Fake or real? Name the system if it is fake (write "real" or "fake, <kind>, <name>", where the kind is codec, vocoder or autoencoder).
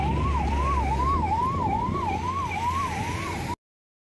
real